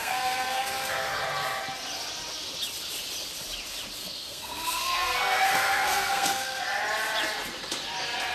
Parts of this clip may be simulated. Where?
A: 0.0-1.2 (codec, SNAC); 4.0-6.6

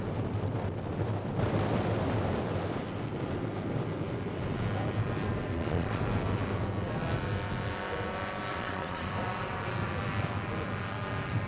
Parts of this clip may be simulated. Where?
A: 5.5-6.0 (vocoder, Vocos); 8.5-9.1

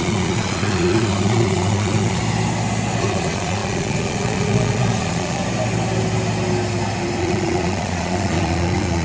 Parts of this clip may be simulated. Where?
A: 0.0-2.2 (vocoder, Vocos); 3.0-5.4; 7.2-9.0